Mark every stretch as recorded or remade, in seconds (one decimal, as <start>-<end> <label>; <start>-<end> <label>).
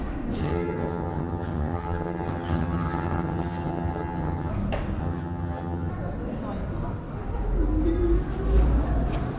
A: 0.0-0.4 recorded; 0.4-4.5 remade; 4.5-5.0 recorded; 5.0-5.9 remade; 5.9-9.4 recorded